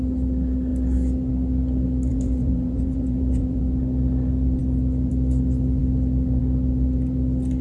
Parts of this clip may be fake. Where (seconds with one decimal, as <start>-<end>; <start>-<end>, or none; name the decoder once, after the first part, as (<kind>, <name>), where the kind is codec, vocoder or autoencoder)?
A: 2.1-3.6 (vocoder, Vocos)